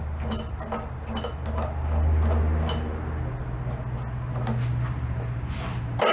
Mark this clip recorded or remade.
recorded